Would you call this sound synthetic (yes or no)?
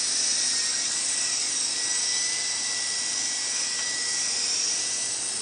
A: no